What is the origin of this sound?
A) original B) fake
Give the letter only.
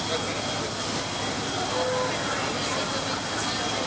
A